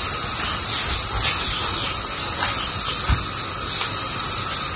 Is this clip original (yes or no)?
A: yes